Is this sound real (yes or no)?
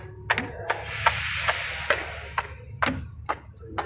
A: yes